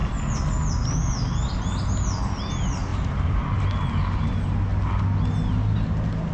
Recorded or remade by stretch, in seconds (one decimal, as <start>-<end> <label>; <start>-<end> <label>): 0.0-2.9 recorded; 2.9-3.9 remade; 3.9-6.3 recorded